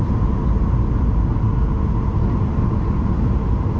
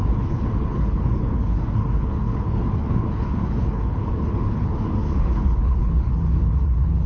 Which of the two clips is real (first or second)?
first